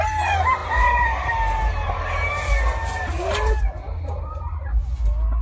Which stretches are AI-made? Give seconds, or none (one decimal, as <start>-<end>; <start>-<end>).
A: none